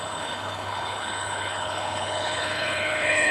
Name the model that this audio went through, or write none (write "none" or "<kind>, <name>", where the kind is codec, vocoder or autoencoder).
codec, HILCodec